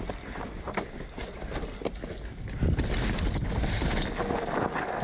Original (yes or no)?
yes